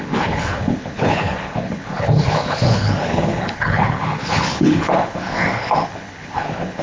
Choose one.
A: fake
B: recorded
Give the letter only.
A